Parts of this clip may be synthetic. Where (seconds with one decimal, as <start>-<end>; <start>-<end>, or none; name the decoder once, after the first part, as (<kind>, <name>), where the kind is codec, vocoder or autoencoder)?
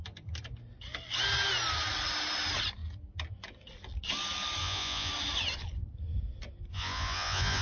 4.6-5.1 (vocoder, Vocos); 6.7-7.6